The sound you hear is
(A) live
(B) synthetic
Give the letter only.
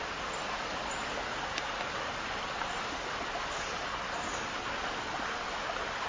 A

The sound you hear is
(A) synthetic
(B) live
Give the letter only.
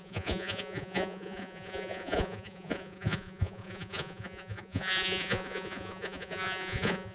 A